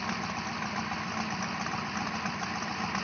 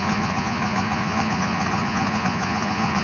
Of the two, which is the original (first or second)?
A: first